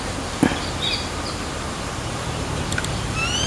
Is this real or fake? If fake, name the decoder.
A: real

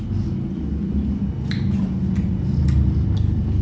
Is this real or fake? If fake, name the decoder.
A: real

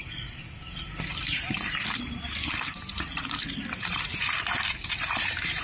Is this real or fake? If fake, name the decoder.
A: fake, vocoder, BigVGAN v2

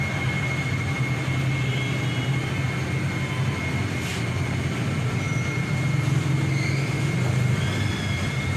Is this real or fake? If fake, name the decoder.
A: real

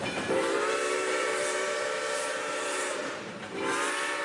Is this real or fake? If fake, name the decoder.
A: fake, vocoder, BigVGAN v2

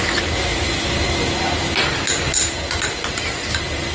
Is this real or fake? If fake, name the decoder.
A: real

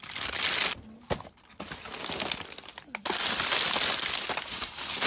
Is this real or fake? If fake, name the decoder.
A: real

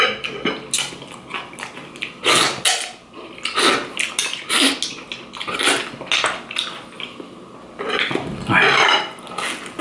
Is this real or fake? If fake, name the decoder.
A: real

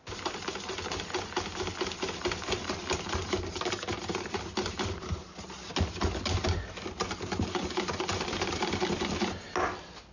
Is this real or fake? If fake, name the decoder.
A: real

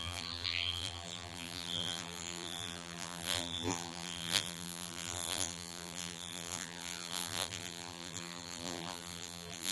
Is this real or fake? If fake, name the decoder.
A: fake, vocoder, BigVGAN v2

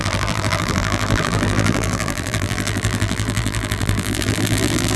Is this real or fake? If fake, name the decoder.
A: fake, vocoder, BigVGAN v2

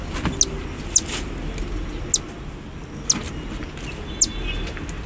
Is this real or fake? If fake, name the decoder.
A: real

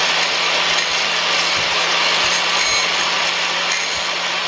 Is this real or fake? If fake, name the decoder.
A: real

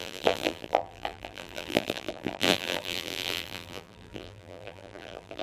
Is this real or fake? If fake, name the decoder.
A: fake, vocoder, BigVGAN v2